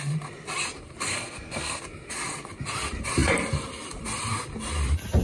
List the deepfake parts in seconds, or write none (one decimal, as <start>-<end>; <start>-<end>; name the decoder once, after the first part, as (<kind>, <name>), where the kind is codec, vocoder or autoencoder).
1.1-1.8 (codec, SNAC)